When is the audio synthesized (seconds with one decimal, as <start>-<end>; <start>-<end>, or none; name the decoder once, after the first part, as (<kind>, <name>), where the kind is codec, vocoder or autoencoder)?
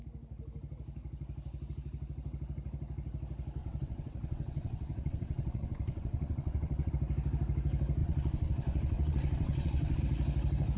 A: 3.6-6.9 (vocoder, WaveNeXt); 8.0-10.0